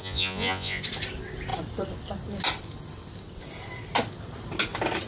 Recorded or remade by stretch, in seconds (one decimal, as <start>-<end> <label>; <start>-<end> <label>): 0.0-0.8 remade; 0.8-5.1 recorded